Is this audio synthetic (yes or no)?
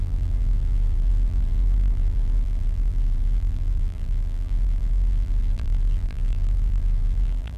yes